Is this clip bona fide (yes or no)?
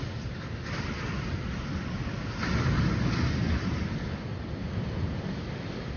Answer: yes